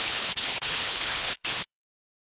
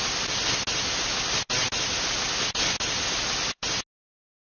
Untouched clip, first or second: second